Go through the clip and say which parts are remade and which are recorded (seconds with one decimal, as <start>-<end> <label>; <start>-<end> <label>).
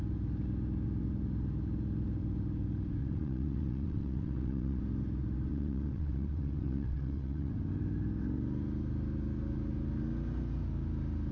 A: 0.0-3.0 recorded; 3.0-4.8 remade; 4.8-5.5 recorded; 5.5-7.5 remade; 7.5-11.3 recorded